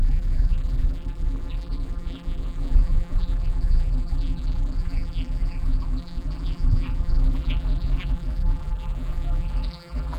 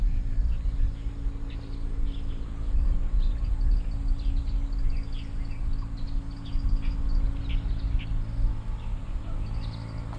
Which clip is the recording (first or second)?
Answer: second